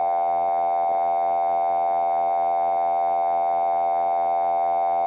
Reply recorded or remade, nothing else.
recorded